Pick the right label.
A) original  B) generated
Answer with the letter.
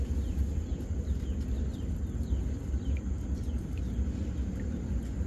A